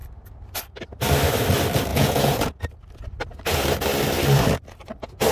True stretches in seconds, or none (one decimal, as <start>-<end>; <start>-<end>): 0.0-1.9; 2.6-5.3